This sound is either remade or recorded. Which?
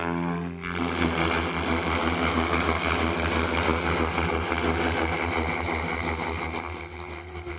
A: recorded